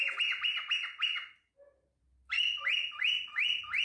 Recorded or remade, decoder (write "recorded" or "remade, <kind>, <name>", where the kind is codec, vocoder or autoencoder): recorded